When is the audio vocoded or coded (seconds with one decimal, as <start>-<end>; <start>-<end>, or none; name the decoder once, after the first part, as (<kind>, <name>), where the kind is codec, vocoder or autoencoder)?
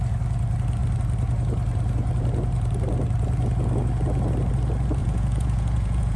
5.0-6.2 (vocoder, Vocos)